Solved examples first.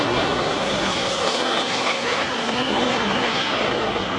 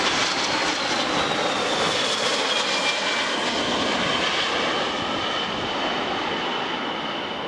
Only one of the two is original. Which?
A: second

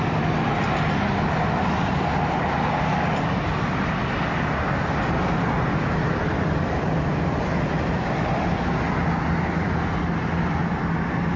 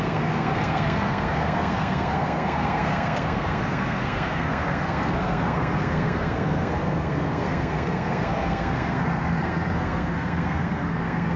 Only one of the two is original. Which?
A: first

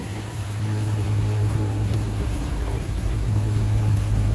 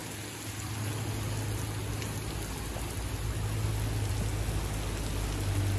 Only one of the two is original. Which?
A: second